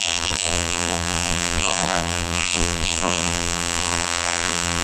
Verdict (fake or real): fake